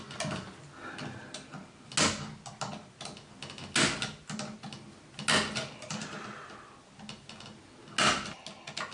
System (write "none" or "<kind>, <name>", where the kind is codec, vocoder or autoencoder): none